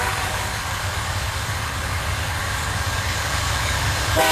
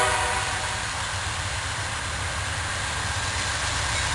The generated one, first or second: first